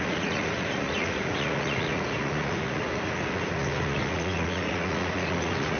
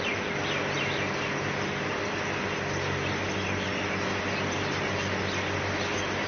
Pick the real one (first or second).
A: second